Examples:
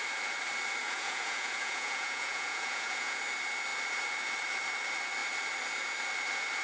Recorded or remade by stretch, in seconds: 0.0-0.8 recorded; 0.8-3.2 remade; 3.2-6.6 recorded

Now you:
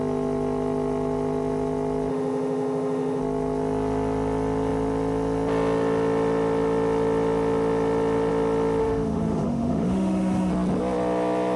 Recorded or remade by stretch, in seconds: 0.0-2.1 recorded; 2.1-3.2 remade; 3.2-8.8 recorded; 8.8-10.5 remade; 10.5-11.6 recorded

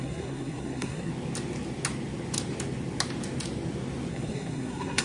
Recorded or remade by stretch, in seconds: 0.0-1.1 remade; 1.1-4.1 recorded; 4.1-5.0 remade

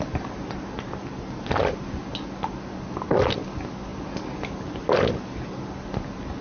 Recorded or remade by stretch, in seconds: 0.0-6.4 recorded